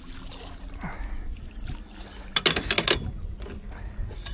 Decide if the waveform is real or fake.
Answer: real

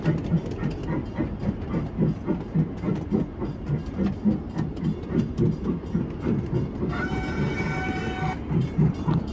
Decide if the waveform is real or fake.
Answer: real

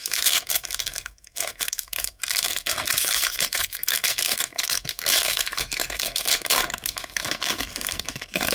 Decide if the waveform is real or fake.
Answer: fake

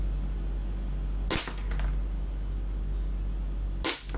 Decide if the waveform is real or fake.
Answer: real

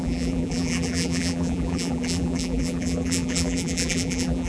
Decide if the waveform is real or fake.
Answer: fake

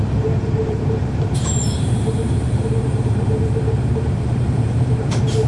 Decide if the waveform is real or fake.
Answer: fake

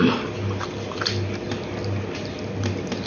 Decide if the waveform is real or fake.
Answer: real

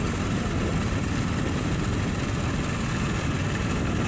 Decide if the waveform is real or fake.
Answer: real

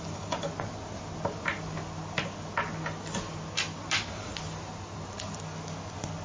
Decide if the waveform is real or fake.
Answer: real